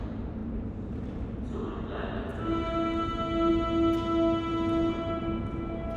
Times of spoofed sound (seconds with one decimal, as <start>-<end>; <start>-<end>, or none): 0.4-1.2; 2.3-3.5